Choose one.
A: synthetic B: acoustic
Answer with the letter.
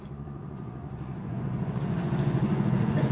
A